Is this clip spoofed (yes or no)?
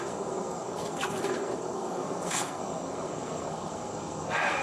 yes